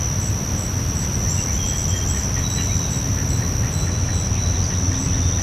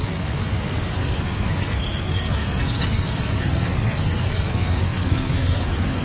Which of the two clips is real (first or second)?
first